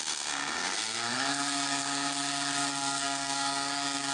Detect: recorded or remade remade